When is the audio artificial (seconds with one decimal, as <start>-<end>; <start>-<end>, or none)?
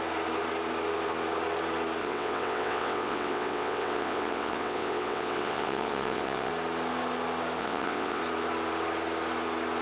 2.0-6.5; 7.6-8.2